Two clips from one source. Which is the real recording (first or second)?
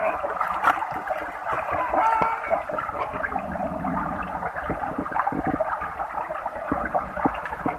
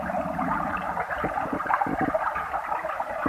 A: first